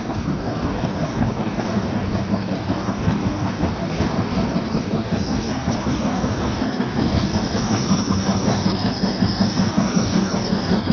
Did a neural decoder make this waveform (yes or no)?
yes